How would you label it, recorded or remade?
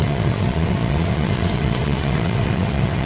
remade